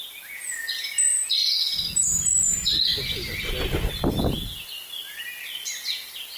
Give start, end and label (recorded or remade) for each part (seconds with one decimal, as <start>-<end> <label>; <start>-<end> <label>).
0.0-6.4 recorded